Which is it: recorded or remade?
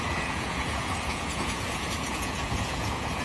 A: remade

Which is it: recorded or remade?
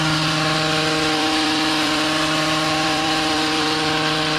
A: remade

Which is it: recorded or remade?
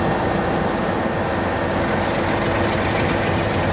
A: recorded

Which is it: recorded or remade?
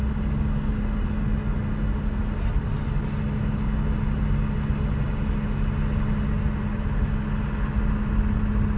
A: recorded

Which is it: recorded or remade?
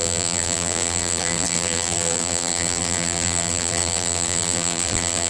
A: remade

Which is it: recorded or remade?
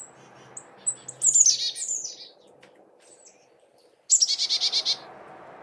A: recorded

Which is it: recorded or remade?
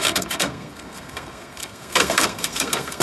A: remade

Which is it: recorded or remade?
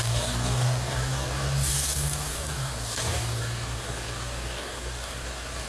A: remade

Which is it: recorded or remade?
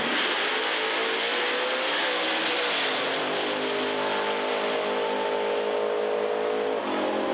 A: recorded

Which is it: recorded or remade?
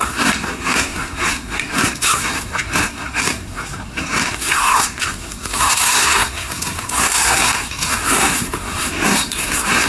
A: remade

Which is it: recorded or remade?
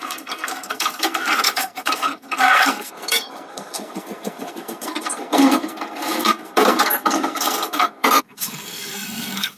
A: remade